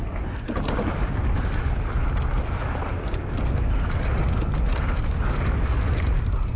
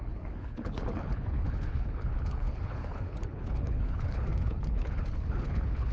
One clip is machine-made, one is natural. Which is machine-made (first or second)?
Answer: second